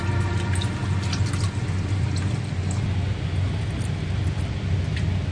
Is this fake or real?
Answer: real